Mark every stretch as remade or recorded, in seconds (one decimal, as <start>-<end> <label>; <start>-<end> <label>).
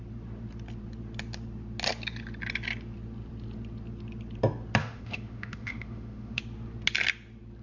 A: 0.0-4.8 recorded; 4.8-6.4 remade; 6.4-7.6 recorded